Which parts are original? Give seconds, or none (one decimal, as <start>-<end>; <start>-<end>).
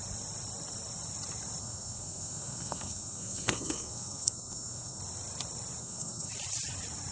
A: 0.0-1.6; 5.0-5.8; 6.3-7.1